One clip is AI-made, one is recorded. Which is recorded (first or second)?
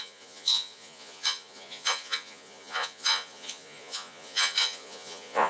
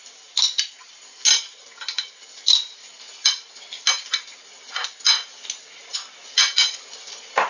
second